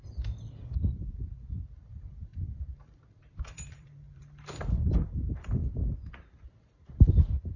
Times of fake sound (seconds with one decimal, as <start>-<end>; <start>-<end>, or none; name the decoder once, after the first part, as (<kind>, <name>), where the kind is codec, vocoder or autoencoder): 2.3-4.2 (vocoder, BigVGAN v2)